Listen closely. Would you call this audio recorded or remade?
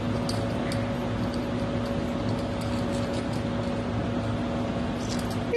recorded